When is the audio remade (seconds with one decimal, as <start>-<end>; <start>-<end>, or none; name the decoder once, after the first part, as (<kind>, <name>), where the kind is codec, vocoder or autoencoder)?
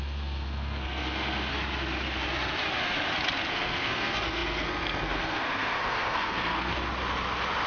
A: 0.0-1.5 (codec, SNAC); 3.5-6.7